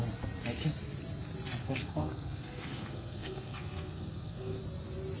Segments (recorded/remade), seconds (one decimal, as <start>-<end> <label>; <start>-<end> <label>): 0.0-1.6 recorded; 1.6-4.6 remade; 4.6-5.2 recorded